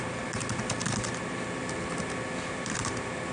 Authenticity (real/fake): real